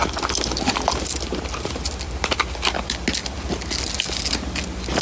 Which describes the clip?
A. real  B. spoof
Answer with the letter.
A